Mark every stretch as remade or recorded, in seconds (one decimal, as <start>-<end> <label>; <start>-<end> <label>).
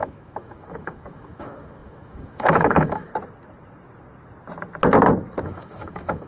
0.0-3.1 remade; 3.1-5.4 recorded; 5.4-6.3 remade